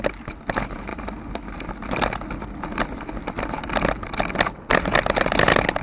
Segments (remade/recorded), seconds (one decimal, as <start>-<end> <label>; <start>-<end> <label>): 0.0-5.8 recorded